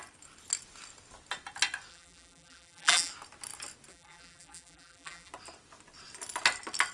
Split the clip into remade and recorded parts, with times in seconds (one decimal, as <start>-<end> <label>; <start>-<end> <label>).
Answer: 0.0-1.9 recorded; 1.9-3.1 remade; 3.1-3.9 recorded; 3.9-5.3 remade; 5.3-6.9 recorded